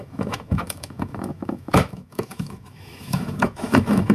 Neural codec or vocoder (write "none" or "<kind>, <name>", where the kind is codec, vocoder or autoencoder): autoencoder, DAC-VAE